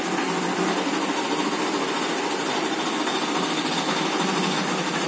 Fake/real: real